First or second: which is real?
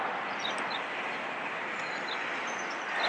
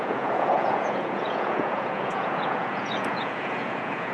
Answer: first